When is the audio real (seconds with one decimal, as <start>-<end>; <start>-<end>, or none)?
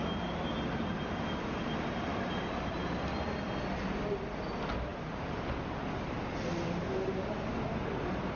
0.0-8.4